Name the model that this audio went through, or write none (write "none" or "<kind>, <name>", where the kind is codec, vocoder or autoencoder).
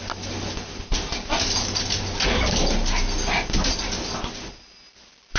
none